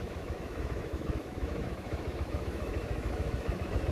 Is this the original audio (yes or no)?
no